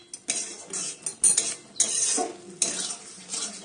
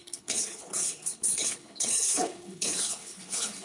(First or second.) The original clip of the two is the first